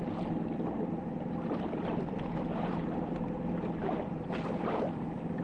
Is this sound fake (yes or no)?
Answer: yes